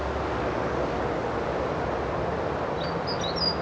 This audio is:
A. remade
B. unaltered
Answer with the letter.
B